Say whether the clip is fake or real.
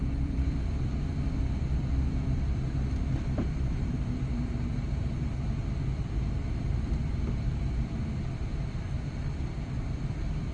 fake